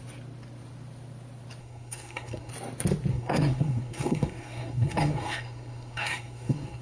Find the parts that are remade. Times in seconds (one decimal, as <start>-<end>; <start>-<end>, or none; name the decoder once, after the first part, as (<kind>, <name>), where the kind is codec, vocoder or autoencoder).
1.6-2.5 (codec, SNAC); 3.1-6.8